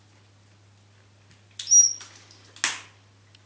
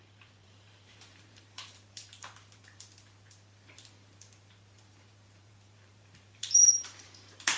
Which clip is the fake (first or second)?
second